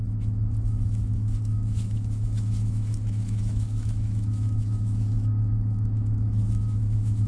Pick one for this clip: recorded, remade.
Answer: remade